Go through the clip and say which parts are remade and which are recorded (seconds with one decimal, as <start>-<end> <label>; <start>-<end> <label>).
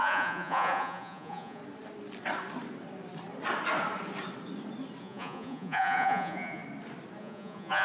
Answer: 0.0-1.6 remade; 1.6-5.0 recorded; 5.0-6.6 remade; 6.6-7.2 recorded; 7.2-7.8 remade